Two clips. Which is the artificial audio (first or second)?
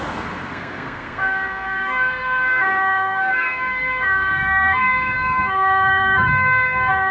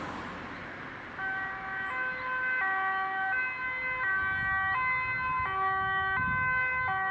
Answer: first